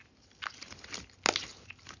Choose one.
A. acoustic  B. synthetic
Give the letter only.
A